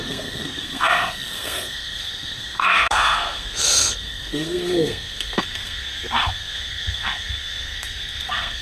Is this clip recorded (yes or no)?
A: no